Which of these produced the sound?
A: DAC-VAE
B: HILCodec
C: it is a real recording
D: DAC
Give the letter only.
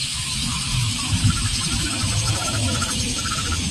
A